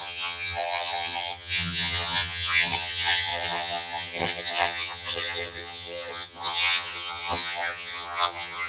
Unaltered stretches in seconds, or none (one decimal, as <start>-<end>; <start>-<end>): none